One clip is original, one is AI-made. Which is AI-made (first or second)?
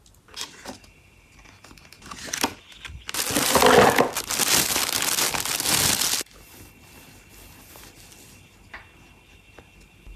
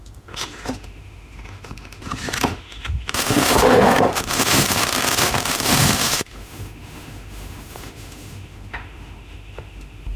second